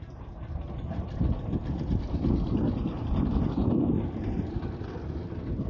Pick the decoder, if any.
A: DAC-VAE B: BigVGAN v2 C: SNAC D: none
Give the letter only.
B